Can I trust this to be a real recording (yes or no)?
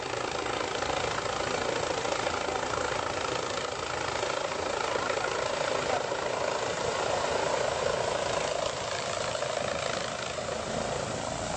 yes